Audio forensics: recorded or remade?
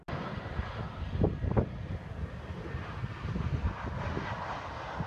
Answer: recorded